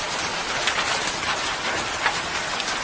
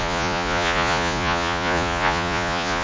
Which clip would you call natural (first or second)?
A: first